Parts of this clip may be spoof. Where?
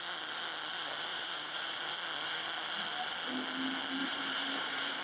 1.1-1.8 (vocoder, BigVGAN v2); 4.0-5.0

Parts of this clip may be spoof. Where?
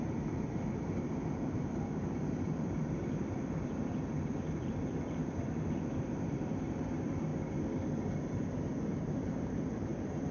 0.0-7.3 (vocoder, BigVGAN v2); 8.2-10.3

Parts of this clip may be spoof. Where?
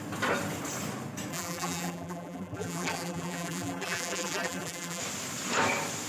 1.3-5.0 (vocoder, BigVGAN v2)